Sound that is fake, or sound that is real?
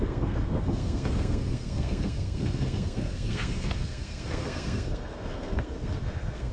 fake